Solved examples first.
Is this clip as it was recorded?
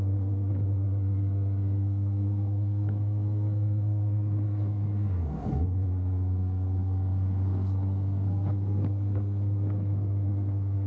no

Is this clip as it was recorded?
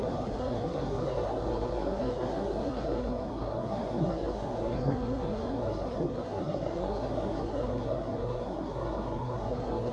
no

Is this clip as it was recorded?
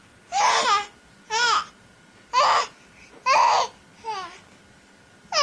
yes